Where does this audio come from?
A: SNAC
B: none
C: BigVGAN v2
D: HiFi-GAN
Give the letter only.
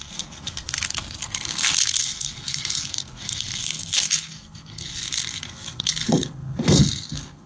A